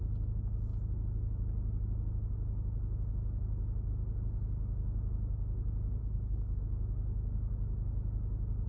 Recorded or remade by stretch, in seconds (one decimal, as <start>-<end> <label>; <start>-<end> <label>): 0.0-6.0 recorded; 6.0-6.6 remade; 6.6-8.7 recorded